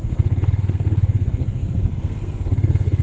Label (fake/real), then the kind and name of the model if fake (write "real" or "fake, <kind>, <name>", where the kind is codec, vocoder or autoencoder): fake, codec, SNAC